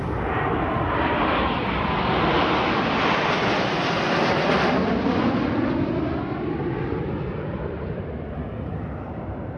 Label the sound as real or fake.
real